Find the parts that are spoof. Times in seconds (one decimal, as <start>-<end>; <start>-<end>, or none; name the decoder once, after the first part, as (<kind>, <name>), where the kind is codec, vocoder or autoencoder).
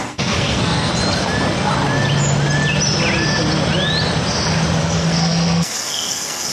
0.0-0.9 (codec, SNAC); 4.8-6.5